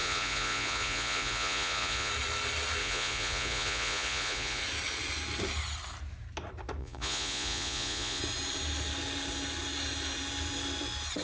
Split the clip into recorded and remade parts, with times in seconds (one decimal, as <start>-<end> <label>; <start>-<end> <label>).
0.0-2.1 remade; 2.1-2.8 recorded; 2.8-4.6 remade; 4.6-6.8 recorded; 6.8-8.2 remade; 8.2-11.2 recorded